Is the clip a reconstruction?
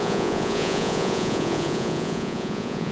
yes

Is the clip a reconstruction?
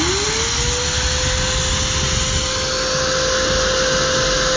no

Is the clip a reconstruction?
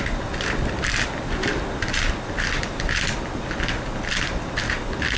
no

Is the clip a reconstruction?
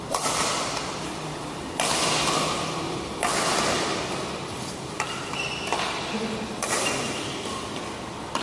no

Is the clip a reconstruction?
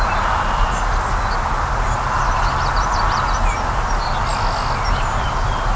no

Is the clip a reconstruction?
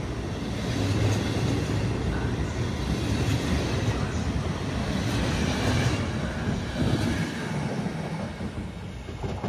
no